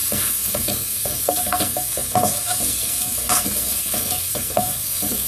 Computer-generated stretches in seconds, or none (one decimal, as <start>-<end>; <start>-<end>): 0.0-5.3